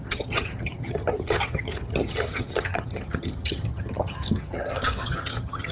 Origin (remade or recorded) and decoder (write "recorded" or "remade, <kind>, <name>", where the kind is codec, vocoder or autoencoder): remade, vocoder, HiFi-GAN